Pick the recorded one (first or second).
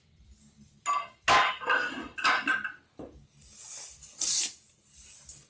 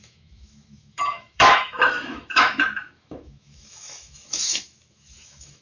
first